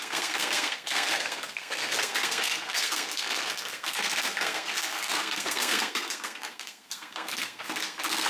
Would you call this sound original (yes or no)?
no